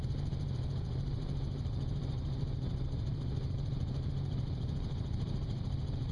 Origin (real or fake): fake